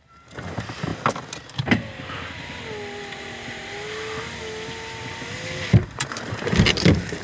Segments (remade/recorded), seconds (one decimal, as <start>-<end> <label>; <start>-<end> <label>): 0.0-7.2 recorded